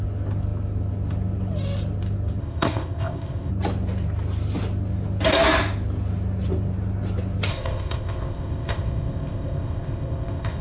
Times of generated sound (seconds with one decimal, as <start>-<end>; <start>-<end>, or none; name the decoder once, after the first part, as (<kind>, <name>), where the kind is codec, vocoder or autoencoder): 2.4-3.5 (codec, ZipCodec); 7.5-10.6